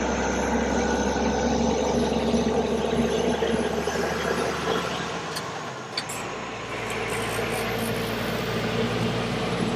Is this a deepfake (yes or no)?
no